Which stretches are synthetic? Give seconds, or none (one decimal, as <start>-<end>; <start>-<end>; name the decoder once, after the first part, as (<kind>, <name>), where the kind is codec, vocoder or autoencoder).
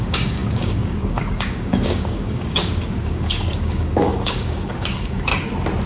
0.0-5.3 (codec, DAC)